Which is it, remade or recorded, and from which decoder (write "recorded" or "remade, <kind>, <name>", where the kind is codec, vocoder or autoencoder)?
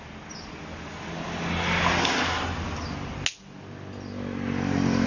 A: recorded